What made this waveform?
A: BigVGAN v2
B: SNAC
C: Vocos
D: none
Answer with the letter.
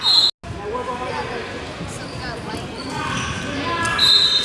D